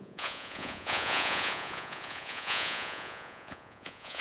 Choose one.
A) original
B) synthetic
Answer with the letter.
B